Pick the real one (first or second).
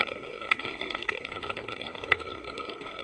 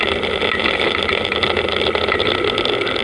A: second